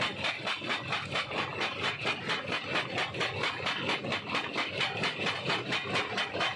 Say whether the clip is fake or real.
real